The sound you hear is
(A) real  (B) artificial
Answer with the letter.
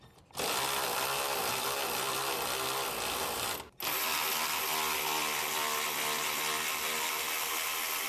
A